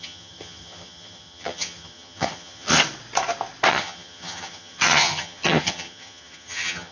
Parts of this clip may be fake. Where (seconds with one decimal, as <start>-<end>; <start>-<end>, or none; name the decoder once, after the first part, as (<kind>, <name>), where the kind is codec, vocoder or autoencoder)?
0.0-2.8 (vocoder, HiFi-GAN); 3.7-6.9